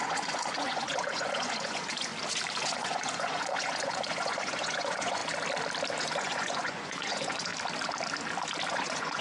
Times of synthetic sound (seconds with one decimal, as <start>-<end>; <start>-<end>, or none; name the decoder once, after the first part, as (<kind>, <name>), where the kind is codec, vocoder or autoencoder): 0.0-2.1 (vocoder, Vocos); 2.6-5.2; 6.0-7.5; 8.7-9.2